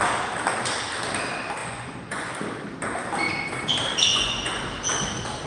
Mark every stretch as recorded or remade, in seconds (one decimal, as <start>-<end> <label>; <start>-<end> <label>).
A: 0.0-1.6 recorded; 1.6-2.3 remade; 2.3-4.1 recorded; 4.1-4.6 remade; 4.6-5.5 recorded